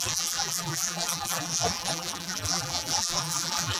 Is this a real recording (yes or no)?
no